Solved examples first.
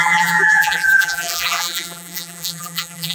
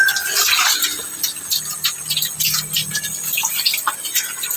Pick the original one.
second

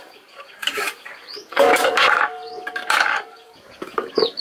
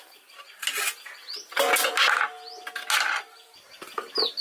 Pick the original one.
second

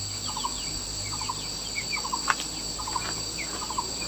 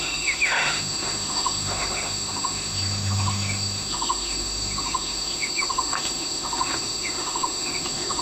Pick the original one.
first